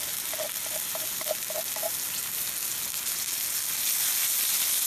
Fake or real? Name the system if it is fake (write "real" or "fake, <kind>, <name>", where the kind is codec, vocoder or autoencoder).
real